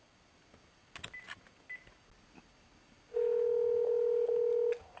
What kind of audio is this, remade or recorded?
recorded